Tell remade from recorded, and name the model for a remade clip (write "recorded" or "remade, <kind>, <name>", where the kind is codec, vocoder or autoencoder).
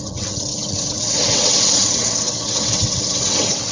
remade, vocoder, WaveNeXt